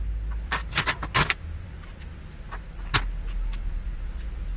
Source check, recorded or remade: recorded